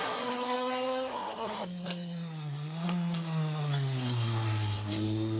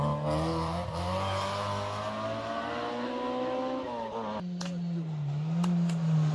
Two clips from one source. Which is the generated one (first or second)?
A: first